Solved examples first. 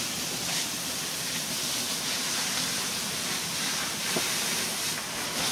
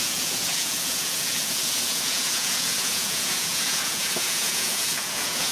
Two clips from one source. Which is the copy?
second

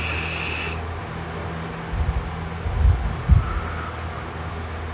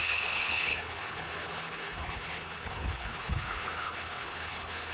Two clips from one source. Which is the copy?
second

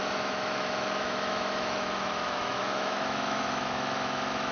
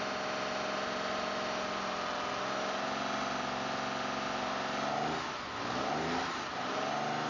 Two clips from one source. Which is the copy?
first